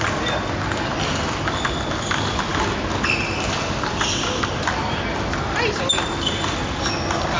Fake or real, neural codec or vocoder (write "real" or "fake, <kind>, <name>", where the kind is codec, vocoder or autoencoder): real